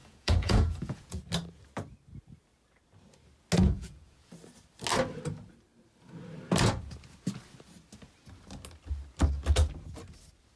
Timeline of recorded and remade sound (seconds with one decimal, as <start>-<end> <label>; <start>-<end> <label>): 0.0-1.2 remade; 1.2-3.6 recorded; 3.6-4.3 remade; 4.3-10.6 recorded